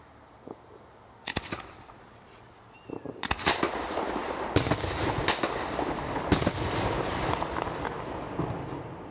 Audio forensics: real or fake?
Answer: real